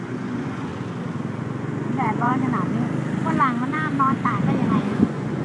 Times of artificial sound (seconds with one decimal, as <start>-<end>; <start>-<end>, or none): 0.0-0.7; 1.4-2.3; 4.7-5.4